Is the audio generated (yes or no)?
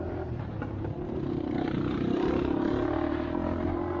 yes